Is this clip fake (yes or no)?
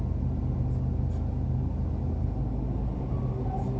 no